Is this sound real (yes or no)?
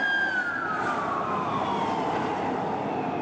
yes